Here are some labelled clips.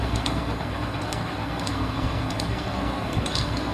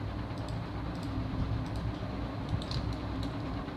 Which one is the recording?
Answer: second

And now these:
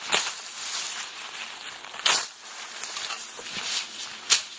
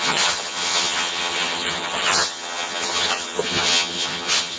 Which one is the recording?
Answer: first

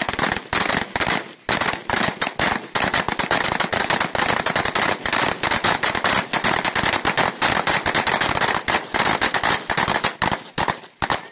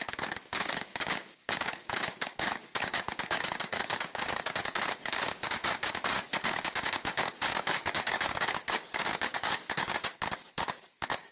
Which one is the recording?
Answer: first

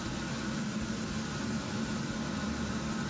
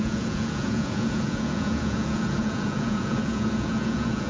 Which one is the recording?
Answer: first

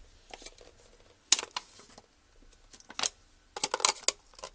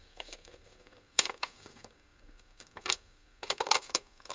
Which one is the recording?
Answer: first